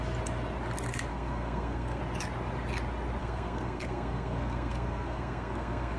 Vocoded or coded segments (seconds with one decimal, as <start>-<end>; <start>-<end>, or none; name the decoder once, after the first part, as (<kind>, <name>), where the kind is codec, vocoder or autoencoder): 1.1-2.0 (codec, SNAC); 3.2-6.0